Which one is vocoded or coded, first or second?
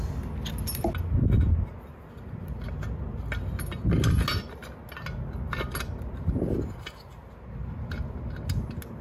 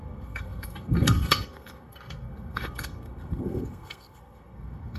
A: second